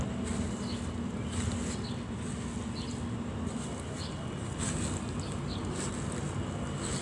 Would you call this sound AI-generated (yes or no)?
no